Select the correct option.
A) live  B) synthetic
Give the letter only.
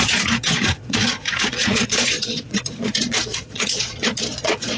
B